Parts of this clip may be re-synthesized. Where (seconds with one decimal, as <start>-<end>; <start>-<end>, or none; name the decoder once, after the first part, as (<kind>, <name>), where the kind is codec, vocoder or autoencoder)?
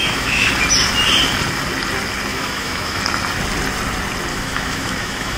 0.0-0.5 (autoencoder, DAC-VAE); 2.3-3.0; 4.3-5.4